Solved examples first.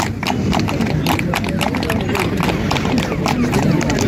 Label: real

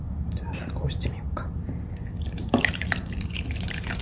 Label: fake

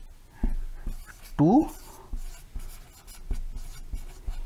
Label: real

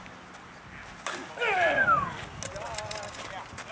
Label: real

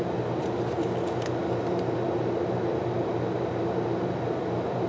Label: real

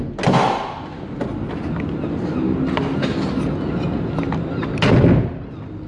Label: real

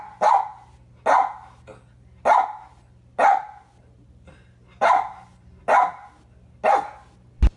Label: real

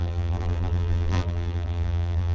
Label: fake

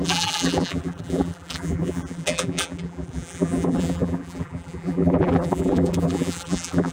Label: fake